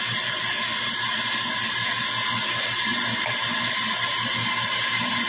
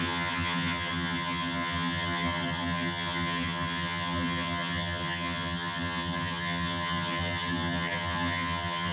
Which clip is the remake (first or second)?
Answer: second